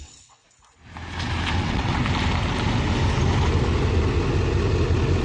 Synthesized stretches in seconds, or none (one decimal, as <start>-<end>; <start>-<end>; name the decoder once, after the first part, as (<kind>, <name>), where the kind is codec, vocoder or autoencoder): 0.0-0.4 (vocoder, WaveNeXt); 1.6-2.0